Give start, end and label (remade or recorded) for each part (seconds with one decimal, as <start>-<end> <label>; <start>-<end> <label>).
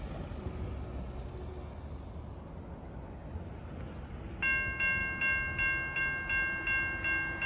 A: 0.0-7.5 recorded